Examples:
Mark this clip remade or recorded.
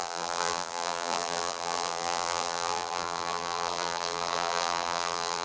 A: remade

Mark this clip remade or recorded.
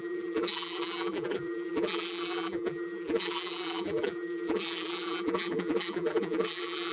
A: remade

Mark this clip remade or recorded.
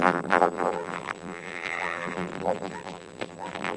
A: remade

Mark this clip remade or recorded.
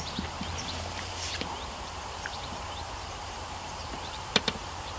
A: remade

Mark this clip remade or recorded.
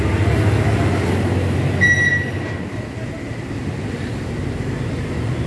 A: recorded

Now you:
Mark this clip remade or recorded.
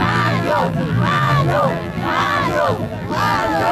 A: remade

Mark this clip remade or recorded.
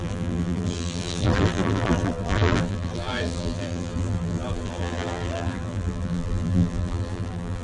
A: remade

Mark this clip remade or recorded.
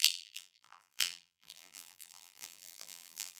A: remade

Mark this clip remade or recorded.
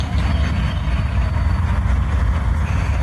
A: recorded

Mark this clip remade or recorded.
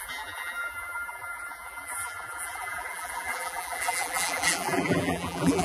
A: remade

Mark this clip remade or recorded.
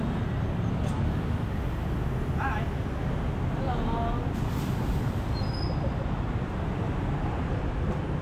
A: recorded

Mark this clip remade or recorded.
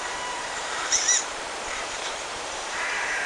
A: remade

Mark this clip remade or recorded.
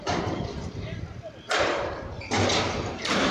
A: remade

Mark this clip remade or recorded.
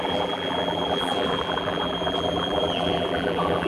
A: remade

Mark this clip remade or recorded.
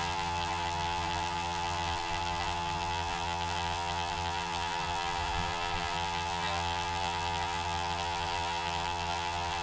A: remade